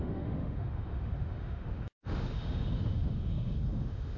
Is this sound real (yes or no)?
no